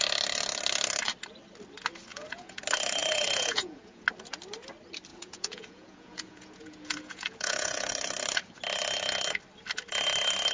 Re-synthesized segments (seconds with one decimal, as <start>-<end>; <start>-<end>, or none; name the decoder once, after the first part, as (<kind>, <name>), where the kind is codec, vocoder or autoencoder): 2.1-2.6 (vocoder, Vocos); 3.0-4.0; 5.1-7.9